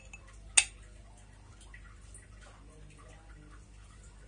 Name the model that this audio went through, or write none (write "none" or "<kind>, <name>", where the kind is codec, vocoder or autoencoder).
none